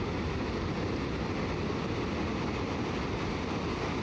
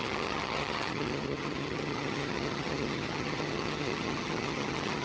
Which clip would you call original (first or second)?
first